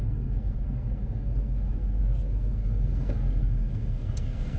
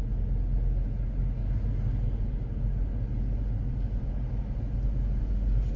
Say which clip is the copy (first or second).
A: first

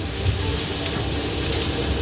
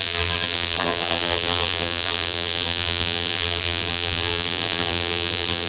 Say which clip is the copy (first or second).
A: second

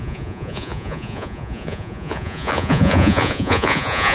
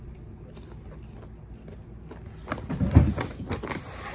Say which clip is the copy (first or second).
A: first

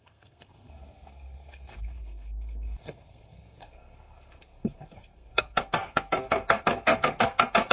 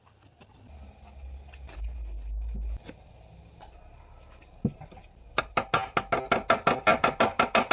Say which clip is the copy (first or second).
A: first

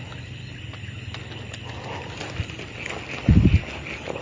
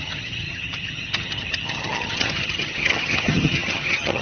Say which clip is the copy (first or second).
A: second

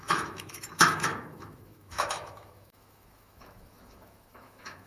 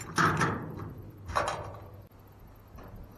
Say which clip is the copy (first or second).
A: first